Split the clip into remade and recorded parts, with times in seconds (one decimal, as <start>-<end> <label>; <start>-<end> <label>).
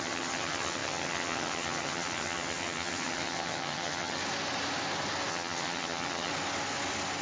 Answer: 0.0-4.2 remade; 4.2-5.3 recorded; 5.3-6.3 remade; 6.3-7.2 recorded